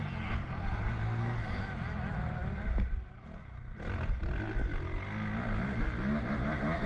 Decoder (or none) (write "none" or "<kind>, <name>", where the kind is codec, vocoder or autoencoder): none